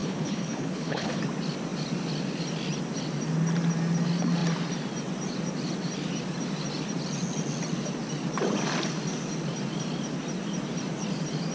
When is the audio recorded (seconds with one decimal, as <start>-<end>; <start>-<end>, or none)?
1.2-11.5